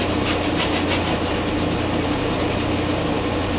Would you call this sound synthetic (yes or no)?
no